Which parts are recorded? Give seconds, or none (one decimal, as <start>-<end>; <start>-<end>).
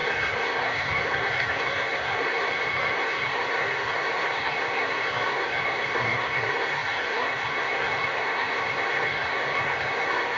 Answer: none